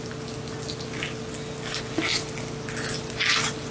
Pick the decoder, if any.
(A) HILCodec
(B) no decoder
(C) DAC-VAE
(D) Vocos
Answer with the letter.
B